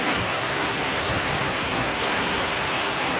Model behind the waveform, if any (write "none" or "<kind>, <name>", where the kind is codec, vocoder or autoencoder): codec, SNAC